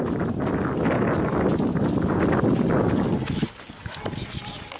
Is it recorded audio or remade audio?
recorded